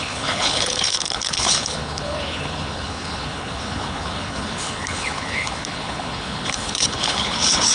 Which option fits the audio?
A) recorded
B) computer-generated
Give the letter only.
B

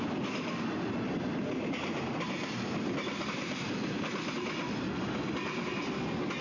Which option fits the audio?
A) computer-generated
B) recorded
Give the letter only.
B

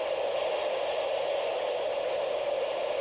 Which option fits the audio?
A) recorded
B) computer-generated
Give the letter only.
A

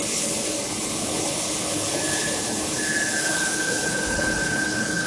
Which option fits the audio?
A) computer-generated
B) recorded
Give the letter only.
A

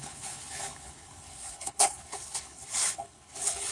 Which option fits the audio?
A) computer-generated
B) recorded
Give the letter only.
A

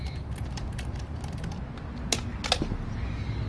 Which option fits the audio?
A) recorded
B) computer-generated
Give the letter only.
A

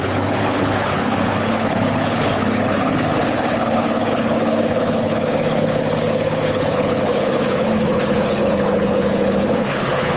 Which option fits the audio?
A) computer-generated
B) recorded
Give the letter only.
A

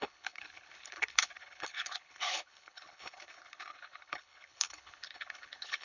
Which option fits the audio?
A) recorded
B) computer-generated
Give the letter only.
B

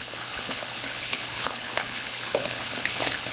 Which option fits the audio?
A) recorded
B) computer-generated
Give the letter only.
B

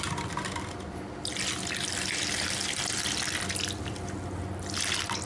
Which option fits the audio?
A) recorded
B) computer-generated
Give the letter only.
A